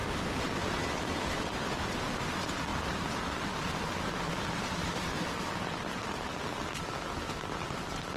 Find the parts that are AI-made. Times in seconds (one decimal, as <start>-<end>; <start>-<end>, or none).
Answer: 0.0-2.2; 2.7-3.7